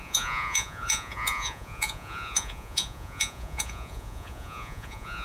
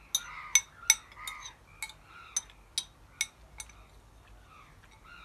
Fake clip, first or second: first